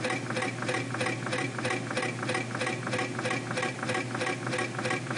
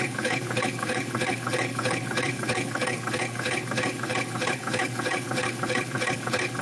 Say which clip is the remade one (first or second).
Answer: second